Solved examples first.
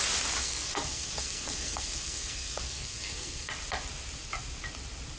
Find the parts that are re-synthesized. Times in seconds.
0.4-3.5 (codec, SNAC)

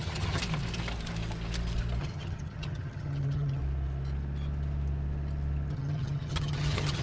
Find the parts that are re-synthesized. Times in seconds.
0.0-0.4 (vocoder, HiFi-GAN); 2.0-3.6; 5.7-7.0

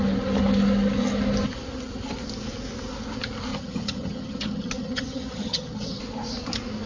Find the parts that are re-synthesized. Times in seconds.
3.5-6.0 (vocoder, HiFi-GAN)